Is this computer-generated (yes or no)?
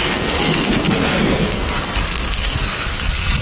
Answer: yes